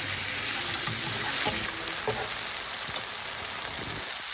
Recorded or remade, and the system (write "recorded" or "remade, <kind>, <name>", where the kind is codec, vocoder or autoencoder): recorded